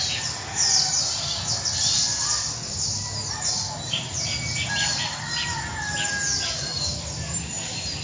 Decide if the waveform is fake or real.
real